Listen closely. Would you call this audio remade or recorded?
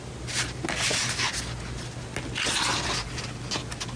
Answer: recorded